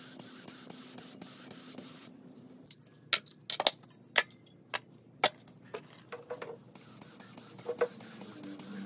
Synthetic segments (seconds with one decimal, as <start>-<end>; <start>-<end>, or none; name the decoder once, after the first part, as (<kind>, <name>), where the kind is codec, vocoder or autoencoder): none